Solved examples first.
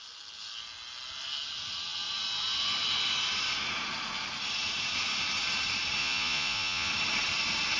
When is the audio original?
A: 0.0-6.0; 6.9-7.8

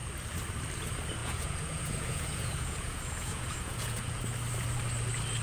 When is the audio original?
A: 0.0-1.2; 4.2-5.4

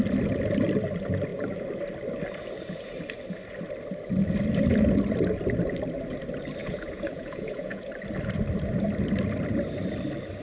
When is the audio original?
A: 0.0-6.6; 7.9-10.4

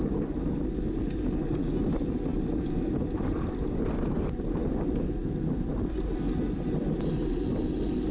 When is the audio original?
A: 0.0-8.1